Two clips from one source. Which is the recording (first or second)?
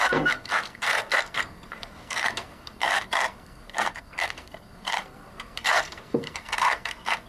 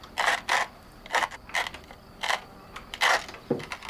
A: second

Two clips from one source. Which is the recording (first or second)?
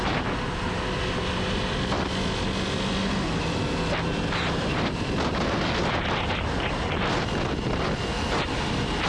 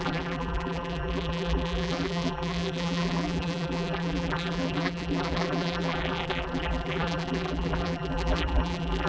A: first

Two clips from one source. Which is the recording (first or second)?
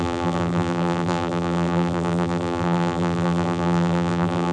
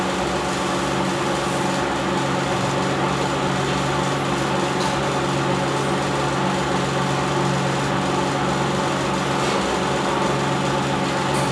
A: second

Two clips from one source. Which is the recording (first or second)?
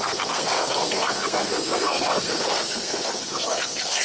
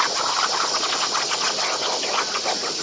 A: second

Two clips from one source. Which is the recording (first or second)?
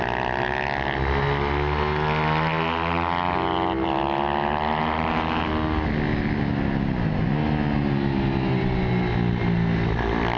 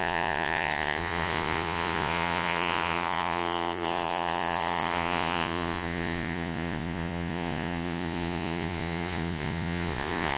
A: first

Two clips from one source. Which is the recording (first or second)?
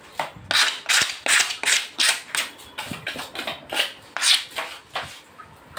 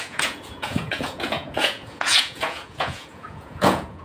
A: first